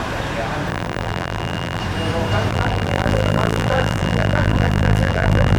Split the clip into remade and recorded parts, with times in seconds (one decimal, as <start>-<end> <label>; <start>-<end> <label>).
0.0-0.7 recorded; 0.7-1.8 remade; 1.8-2.5 recorded; 2.5-5.6 remade